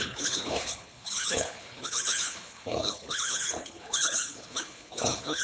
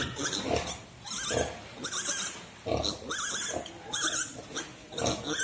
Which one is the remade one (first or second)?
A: first